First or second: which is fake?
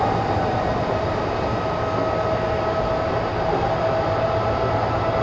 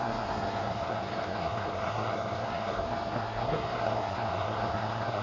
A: second